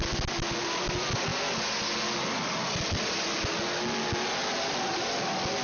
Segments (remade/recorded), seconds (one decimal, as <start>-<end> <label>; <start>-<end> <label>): 0.0-5.6 recorded